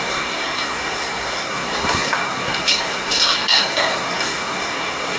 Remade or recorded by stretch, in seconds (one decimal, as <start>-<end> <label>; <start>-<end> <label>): 0.0-5.2 remade